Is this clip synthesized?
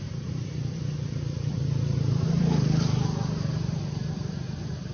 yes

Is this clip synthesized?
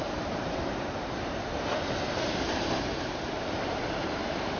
yes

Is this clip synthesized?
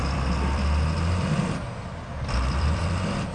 yes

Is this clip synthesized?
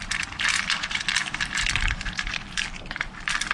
yes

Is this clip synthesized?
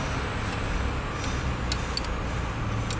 no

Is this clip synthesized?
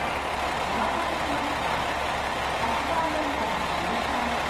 no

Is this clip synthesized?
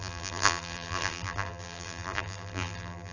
yes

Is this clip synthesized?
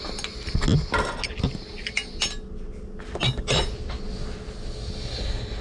no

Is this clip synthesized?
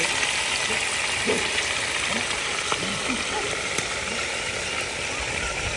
yes